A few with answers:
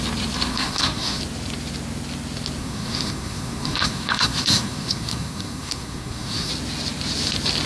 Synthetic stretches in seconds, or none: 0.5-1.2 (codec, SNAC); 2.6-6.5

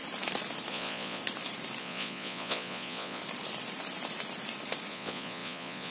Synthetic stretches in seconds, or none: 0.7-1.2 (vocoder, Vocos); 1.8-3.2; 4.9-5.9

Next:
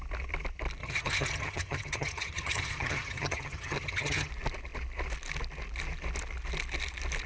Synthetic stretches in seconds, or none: 0.8-4.3 (vocoder, HiFi-GAN)